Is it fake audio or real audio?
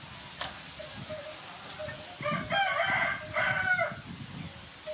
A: real